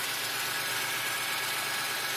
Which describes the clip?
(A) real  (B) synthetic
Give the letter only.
A